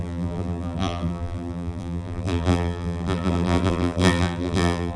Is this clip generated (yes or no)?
yes